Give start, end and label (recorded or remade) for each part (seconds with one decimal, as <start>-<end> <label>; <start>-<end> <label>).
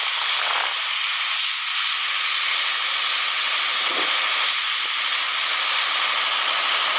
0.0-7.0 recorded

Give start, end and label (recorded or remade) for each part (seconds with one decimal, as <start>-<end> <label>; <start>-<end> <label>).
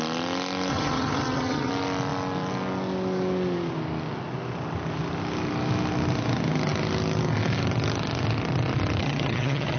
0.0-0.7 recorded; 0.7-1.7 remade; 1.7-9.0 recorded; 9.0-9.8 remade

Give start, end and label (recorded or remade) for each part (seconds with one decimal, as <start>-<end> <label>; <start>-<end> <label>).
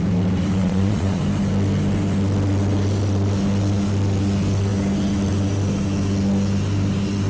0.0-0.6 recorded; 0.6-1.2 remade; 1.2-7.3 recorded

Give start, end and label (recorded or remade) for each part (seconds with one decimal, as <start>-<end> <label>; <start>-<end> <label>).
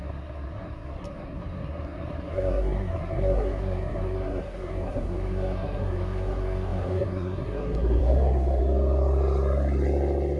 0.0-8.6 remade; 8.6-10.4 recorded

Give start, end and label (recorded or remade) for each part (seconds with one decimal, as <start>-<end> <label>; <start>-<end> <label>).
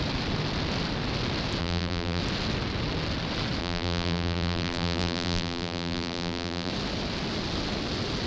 0.0-1.6 recorded; 1.6-2.2 remade; 2.2-3.6 recorded; 3.6-6.7 remade; 6.7-8.3 recorded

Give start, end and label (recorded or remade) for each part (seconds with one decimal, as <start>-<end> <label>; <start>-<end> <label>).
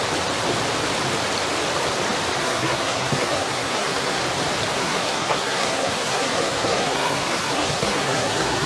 0.0-2.4 recorded; 2.4-4.2 remade; 4.2-4.8 recorded; 4.8-8.7 remade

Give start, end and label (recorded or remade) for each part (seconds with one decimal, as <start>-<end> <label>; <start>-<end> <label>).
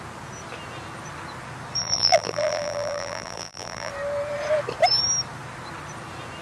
0.0-1.8 recorded; 1.8-3.9 remade; 3.9-6.4 recorded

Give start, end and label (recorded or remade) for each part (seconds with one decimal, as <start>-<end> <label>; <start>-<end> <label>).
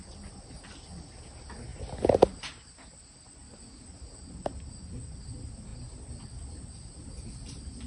0.0-7.9 recorded